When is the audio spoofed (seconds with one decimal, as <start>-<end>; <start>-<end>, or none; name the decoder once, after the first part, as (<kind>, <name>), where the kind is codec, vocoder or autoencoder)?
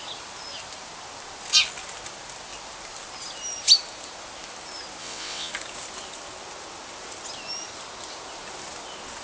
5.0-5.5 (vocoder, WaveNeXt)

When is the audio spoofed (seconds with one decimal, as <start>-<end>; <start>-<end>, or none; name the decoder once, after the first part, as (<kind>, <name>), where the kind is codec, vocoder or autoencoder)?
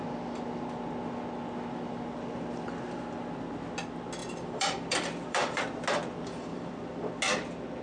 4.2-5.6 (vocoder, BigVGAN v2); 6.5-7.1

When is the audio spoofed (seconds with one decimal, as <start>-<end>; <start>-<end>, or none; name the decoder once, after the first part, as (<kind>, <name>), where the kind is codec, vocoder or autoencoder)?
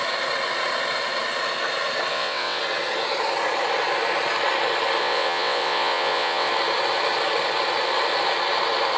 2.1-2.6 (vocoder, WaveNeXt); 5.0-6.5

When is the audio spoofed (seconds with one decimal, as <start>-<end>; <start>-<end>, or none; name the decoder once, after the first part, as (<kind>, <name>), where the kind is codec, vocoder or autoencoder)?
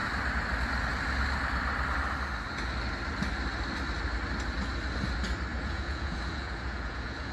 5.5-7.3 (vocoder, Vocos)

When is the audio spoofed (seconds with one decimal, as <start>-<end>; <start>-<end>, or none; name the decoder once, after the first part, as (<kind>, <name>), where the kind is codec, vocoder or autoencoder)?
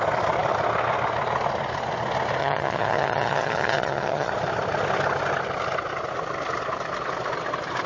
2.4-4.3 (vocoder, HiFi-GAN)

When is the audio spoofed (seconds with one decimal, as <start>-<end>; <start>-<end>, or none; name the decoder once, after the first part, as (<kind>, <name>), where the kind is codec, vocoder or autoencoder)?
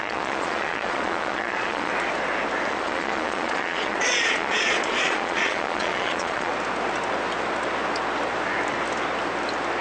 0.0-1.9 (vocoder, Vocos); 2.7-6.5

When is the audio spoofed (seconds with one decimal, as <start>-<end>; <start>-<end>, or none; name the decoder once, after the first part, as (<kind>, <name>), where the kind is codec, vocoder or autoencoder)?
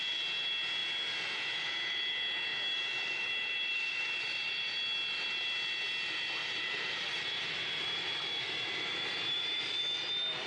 2.5-4.7 (vocoder, BigVGAN v2); 6.4-9.8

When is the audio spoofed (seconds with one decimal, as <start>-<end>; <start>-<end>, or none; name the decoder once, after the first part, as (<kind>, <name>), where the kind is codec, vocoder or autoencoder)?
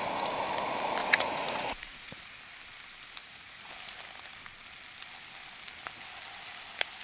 1.0-2.2 (vocoder, Vocos); 3.2-3.7